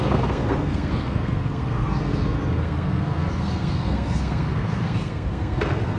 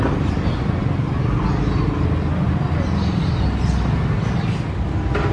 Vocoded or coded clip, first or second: first